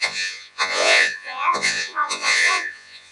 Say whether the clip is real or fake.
fake